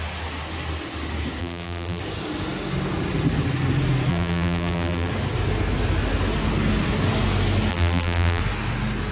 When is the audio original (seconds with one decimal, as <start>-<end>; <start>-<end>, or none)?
0.0-1.4; 2.0-4.1; 5.1-7.7; 8.4-9.1